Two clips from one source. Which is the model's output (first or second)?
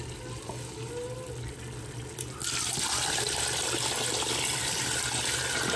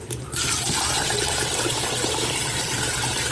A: second